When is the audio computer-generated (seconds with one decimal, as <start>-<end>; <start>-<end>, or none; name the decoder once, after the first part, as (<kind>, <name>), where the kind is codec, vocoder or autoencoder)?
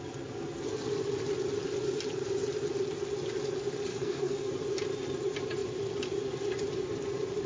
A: 3.9-4.5 (codec, SNAC)